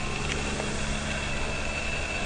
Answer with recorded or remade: recorded